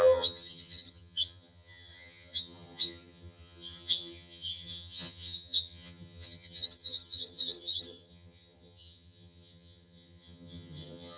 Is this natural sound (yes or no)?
no